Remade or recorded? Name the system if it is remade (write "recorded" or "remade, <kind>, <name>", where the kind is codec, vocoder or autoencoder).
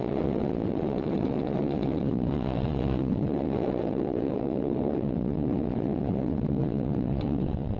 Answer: remade, vocoder, WaveNeXt